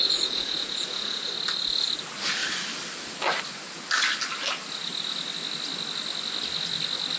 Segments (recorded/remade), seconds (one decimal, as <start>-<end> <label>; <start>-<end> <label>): 0.0-1.3 remade; 1.3-7.2 recorded